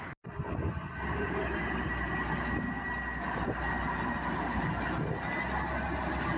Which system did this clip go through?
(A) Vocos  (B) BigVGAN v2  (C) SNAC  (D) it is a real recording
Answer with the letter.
D